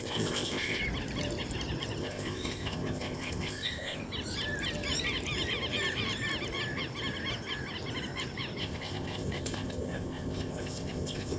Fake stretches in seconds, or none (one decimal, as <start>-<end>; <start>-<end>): 0.0-0.8; 2.0-4.0; 8.6-11.4